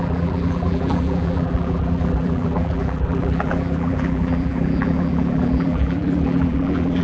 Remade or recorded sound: remade